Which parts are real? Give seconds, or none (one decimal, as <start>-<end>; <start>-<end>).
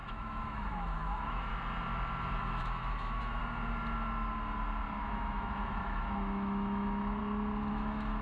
1.5-2.4; 3.4-5.0; 7.2-7.7